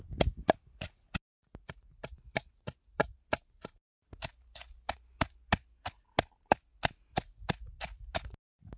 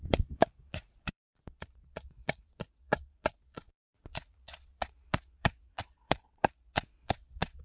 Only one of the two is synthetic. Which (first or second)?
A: second